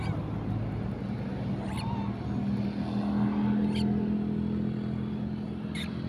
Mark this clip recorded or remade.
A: recorded